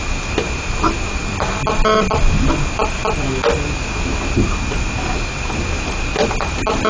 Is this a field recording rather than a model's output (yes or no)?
yes